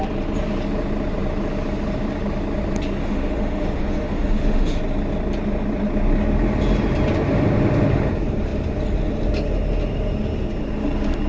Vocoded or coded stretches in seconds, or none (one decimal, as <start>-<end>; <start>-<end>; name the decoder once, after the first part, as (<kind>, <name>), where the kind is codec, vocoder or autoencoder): 3.0-4.8 (autoencoder, DAC-VAE)